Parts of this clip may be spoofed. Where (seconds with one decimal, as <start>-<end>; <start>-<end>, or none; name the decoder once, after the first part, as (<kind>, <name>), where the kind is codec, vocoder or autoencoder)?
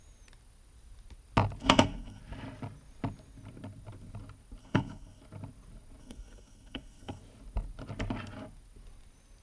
1.6-2.2 (codec, SNAC); 4.6-5.2; 6.0-7.2